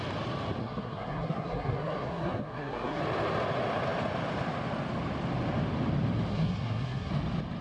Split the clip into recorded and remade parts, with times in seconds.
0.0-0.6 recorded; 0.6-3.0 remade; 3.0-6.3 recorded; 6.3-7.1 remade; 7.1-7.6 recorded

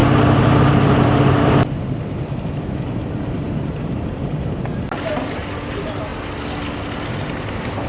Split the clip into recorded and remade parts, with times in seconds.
0.0-4.6 remade; 4.6-7.9 recorded

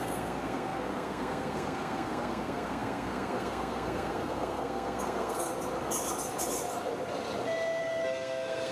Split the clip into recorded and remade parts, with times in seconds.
0.0-5.5 remade; 5.5-7.8 recorded; 7.8-8.7 remade

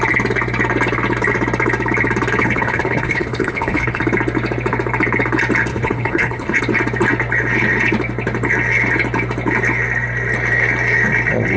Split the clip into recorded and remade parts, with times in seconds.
0.0-2.4 recorded; 2.4-4.0 remade; 4.0-5.7 recorded; 5.7-6.6 remade; 6.6-11.6 recorded

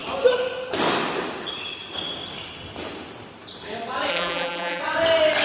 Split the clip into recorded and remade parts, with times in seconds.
0.0-4.1 recorded; 4.1-4.8 remade; 4.8-5.4 recorded